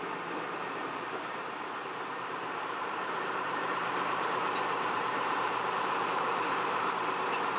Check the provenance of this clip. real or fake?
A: fake